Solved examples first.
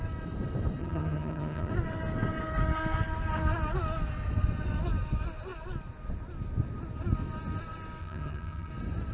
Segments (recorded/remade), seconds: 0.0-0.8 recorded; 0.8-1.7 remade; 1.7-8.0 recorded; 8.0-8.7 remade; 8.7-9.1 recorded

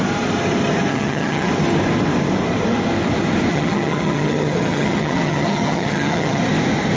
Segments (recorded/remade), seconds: 0.0-0.9 recorded; 0.9-1.5 remade; 1.5-3.5 recorded; 3.5-6.4 remade; 6.4-7.0 recorded